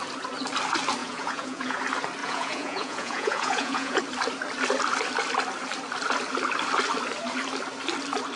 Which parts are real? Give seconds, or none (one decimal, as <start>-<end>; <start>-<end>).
0.0-1.0; 1.8-2.2; 4.0-8.4